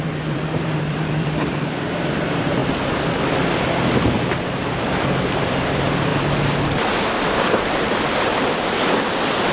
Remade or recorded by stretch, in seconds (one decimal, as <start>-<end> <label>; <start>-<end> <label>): 0.0-2.6 remade; 2.6-4.6 recorded; 4.6-9.5 remade